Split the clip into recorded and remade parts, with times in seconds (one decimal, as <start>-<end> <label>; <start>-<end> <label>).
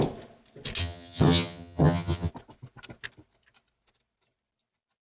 0.0-0.8 recorded; 0.8-2.3 remade; 2.3-5.0 recorded